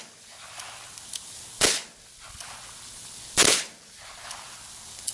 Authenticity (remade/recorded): recorded